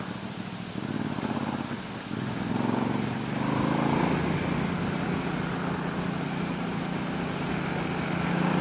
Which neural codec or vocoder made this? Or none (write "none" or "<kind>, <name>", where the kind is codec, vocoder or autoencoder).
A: none